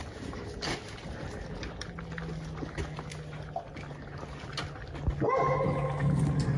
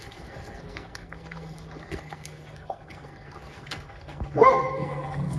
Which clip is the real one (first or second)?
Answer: first